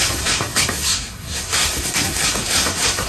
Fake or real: fake